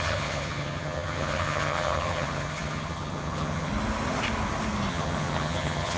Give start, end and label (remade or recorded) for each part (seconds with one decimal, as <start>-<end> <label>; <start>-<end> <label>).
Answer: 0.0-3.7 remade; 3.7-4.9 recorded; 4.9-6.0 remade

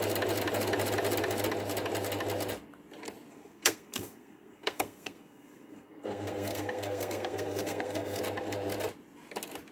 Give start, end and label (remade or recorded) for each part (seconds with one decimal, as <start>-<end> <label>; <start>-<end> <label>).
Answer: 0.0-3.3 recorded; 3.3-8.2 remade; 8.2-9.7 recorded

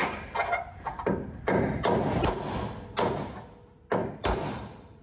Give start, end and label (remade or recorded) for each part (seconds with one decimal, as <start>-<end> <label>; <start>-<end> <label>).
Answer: 0.0-0.8 remade; 0.8-4.0 recorded; 4.0-5.0 remade

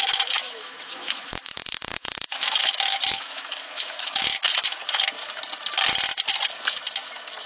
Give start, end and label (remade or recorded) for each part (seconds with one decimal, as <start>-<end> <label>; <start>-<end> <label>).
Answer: 0.0-4.8 remade; 4.8-7.5 recorded